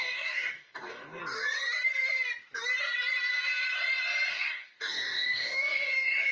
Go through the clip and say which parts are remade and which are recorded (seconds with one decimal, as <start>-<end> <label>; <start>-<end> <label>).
0.0-1.2 remade; 1.2-4.3 recorded; 4.3-6.3 remade

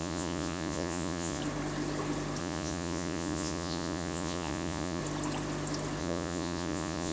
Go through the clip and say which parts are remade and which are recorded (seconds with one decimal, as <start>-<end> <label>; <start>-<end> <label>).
0.0-1.4 remade; 1.4-2.4 recorded; 2.4-5.0 remade; 5.0-6.0 recorded; 6.0-7.1 remade

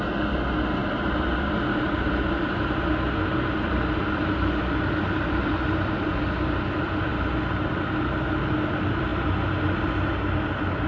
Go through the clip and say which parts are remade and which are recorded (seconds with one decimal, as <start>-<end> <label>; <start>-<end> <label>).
0.0-0.8 recorded; 0.8-5.9 remade; 5.9-10.9 recorded

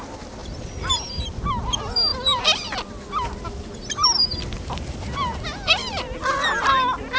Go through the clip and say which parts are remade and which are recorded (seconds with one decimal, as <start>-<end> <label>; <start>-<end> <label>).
0.0-0.4 recorded; 0.4-1.2 remade; 1.2-7.2 recorded

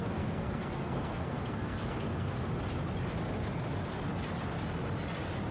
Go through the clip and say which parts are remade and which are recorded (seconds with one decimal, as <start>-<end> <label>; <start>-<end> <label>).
0.0-2.4 remade; 2.4-5.5 recorded

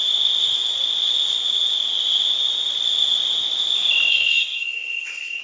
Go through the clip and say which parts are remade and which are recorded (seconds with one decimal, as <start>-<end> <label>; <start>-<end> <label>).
0.0-4.1 recorded; 4.1-5.4 remade

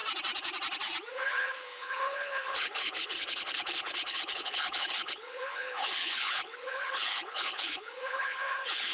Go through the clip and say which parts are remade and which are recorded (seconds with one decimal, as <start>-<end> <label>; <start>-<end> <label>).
0.0-1.1 recorded; 1.1-8.9 remade